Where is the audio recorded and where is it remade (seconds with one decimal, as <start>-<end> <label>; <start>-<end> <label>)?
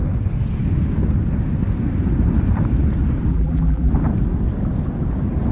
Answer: 0.0-3.3 recorded; 3.3-3.9 remade; 3.9-5.5 recorded